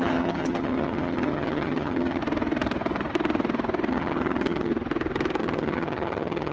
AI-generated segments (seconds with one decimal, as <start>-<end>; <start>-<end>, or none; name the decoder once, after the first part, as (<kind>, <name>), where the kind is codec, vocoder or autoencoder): 0.0-2.2 (vocoder, HiFi-GAN); 3.9-4.7; 5.4-6.5